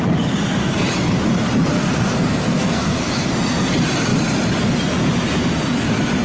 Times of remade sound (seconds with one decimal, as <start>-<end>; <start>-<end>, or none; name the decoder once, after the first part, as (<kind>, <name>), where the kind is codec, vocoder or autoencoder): 1.7-3.3 (codec, SNAC)